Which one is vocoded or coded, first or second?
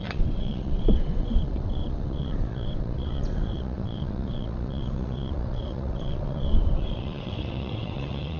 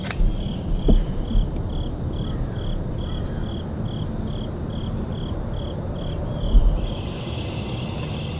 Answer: first